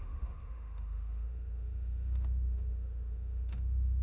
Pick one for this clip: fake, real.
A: fake